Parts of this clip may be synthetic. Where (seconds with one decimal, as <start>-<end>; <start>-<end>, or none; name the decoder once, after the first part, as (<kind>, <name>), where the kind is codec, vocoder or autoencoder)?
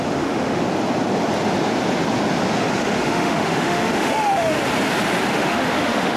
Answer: 0.0-0.6 (autoencoder, DAC-VAE); 2.8-4.6; 5.3-6.2